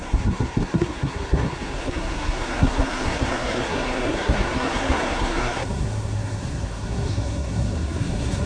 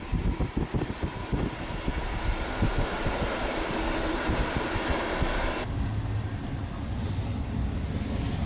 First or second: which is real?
second